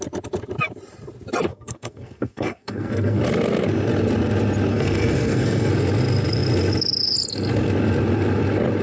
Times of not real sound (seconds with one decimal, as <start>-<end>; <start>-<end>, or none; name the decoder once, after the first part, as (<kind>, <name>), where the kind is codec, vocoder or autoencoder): 1.5-3.2 (codec, SNAC); 4.7-5.7

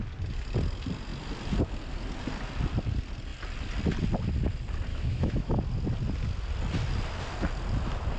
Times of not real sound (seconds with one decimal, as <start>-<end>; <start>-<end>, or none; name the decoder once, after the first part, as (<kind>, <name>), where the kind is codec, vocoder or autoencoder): 4.9-5.6 (autoencoder, DAC-VAE)

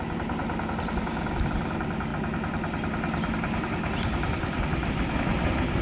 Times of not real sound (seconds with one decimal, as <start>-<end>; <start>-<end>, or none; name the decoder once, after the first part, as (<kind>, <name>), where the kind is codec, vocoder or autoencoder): none

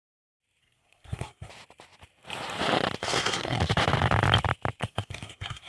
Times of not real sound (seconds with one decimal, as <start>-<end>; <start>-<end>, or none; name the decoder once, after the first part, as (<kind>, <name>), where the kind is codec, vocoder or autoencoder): 0.6-1.5 (codec, SNAC); 3.0-3.6; 4.8-5.7

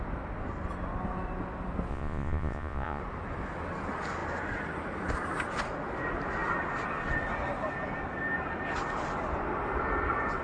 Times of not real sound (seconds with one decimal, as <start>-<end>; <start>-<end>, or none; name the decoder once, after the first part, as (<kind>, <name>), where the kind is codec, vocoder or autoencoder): 1.9-3.0 (vocoder, Vocos)

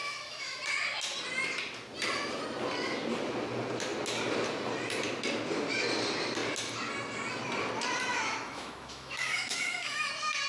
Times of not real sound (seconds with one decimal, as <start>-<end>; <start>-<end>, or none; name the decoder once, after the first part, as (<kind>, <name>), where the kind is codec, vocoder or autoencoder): 0.0-0.6 (autoencoder, DAC-VAE); 8.1-10.1